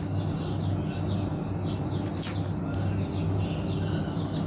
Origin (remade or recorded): recorded